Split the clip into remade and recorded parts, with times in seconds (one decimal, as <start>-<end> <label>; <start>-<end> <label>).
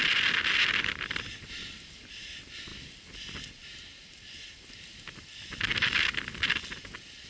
0.0-7.3 recorded